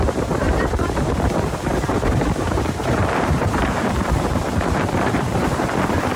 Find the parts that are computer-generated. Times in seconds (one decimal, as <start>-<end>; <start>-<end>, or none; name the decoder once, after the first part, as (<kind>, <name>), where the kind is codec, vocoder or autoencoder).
0.0-6.2 (vocoder, BigVGAN v2)

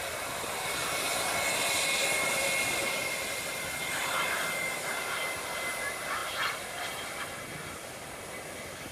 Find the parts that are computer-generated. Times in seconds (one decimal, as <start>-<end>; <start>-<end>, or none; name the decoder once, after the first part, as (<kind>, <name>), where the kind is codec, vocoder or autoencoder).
6.2-7.4 (vocoder, BigVGAN v2)

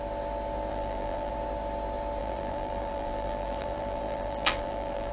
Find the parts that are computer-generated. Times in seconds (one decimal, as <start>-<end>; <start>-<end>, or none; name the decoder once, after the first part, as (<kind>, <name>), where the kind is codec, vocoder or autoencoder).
0.7-1.3 (vocoder, BigVGAN v2); 2.2-5.1

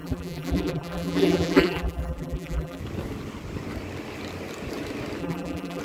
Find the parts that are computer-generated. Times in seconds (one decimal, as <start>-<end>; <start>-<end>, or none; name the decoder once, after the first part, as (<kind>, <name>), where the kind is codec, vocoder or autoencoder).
0.0-2.8 (vocoder, BigVGAN v2); 5.2-5.8

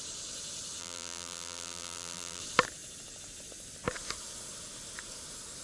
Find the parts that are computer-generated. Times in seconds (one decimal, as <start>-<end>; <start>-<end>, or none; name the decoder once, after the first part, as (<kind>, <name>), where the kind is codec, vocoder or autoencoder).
0.8-2.4 (vocoder, BigVGAN v2)

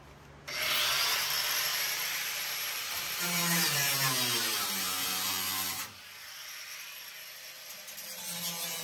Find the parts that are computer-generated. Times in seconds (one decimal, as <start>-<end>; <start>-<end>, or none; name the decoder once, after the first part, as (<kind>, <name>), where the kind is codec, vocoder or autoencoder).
1.7-6.0 (vocoder, BigVGAN v2)

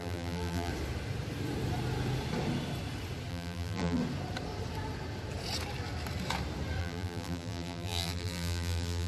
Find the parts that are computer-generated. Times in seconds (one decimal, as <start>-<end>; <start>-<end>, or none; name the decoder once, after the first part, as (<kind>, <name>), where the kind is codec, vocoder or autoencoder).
0.0-0.7 (vocoder, BigVGAN v2); 3.3-4.0; 6.8-9.1